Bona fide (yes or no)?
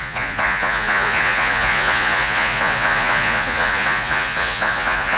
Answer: no